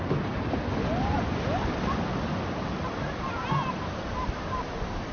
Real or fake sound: real